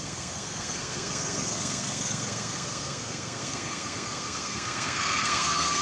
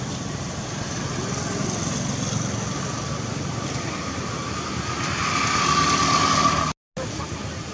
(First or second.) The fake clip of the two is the first